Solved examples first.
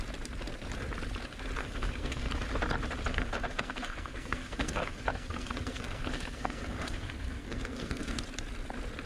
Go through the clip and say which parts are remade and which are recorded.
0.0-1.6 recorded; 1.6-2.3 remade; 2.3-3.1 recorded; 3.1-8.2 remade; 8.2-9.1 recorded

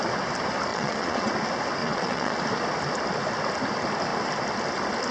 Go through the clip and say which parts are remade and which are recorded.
0.0-0.7 recorded; 0.7-1.3 remade; 1.3-1.8 recorded; 1.8-2.4 remade; 2.4-5.1 recorded